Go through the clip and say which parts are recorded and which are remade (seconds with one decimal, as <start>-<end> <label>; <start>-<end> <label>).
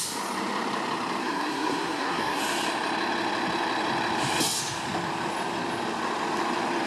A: 0.0-1.2 recorded; 1.2-2.4 remade; 2.4-6.9 recorded